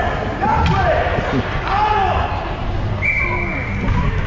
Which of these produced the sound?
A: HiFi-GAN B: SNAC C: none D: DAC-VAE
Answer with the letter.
C